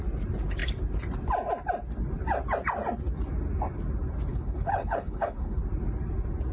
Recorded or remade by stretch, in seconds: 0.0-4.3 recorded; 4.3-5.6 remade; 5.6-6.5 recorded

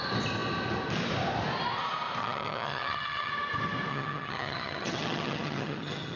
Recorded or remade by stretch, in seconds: 0.0-2.2 recorded; 2.2-3.3 remade; 3.3-3.9 recorded; 3.9-6.2 remade

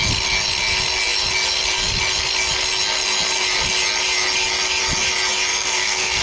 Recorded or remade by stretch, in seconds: 0.0-5.5 recorded; 5.5-6.2 remade

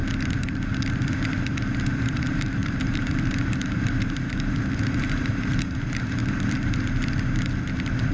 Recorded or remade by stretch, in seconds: 0.0-2.0 recorded; 2.0-6.2 remade; 6.2-8.1 recorded